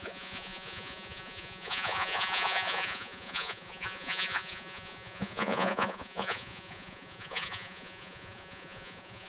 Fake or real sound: fake